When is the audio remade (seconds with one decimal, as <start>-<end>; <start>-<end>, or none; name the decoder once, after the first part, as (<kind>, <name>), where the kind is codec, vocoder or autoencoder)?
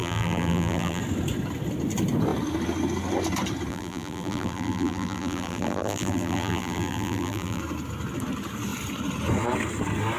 0.0-1.0 (vocoder, BigVGAN v2); 3.7-7.6